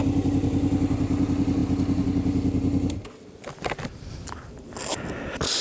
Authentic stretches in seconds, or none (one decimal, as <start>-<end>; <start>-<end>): 0.0-5.6

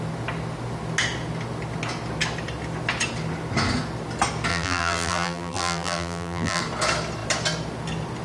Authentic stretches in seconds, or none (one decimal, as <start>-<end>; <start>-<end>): 0.0-4.5; 6.6-8.2

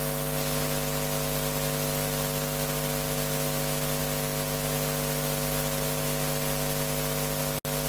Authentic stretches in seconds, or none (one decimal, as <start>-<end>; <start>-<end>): 0.0-7.9